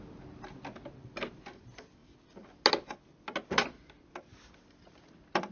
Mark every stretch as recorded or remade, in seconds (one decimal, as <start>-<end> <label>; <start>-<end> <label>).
0.0-5.5 recorded